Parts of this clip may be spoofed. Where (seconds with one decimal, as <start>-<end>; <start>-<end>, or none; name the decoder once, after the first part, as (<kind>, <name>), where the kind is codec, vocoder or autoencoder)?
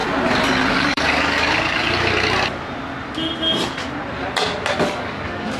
0.7-1.8 (codec, DAC); 4.7-5.6